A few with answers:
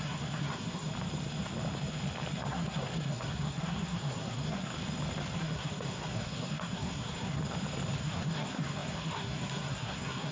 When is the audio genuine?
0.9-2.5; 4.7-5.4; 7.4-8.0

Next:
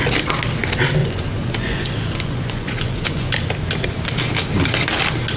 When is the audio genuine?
0.0-1.0; 3.3-5.4

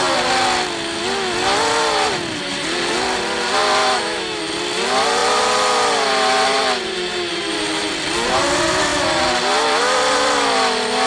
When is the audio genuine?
0.0-3.8; 4.4-11.1

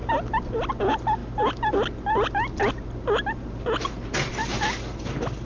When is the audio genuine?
0.0-5.4

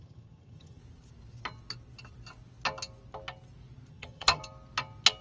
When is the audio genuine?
0.8-3.9; 4.4-5.2

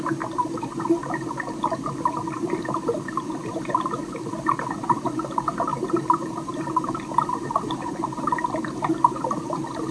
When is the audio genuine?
0.0-5.7; 8.4-9.9